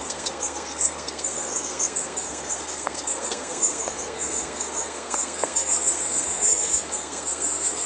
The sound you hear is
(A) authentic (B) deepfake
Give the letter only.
B